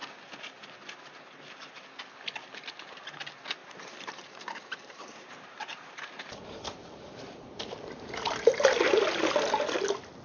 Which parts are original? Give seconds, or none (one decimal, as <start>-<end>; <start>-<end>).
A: 0.0-3.6; 8.7-10.2

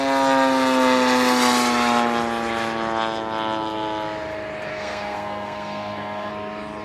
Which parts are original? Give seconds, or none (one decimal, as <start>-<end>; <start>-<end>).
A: 0.0-4.7; 6.3-6.8

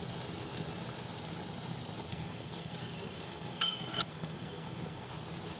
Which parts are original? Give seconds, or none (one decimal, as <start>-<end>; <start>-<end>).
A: 0.0-2.1; 5.1-5.6

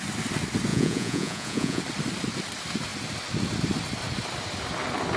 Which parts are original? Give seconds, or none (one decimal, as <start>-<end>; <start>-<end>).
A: 0.0-0.7; 1.8-5.2

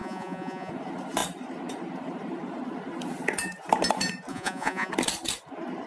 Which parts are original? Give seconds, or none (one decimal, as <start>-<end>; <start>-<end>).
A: 0.7-4.3; 4.9-5.9

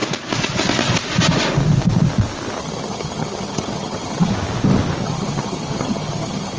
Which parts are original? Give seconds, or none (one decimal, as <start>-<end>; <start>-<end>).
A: 0.0-2.6; 4.3-5.0

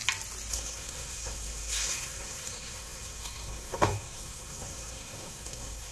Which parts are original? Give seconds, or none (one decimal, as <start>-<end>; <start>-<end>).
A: 0.0-0.5

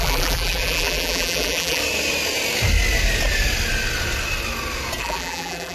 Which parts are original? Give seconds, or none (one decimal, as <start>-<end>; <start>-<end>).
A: 1.8-5.0